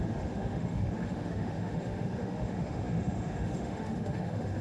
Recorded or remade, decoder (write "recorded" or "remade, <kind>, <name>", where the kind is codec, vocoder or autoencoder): remade, autoencoder, DAC-VAE